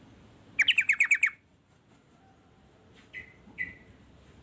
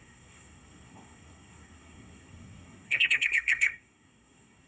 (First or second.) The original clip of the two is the first